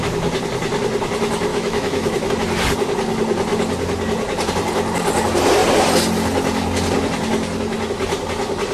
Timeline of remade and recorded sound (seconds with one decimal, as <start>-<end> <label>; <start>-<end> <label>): 0.0-1.5 recorded; 1.5-2.3 remade; 2.3-8.7 recorded